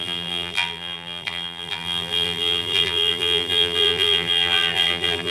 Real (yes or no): no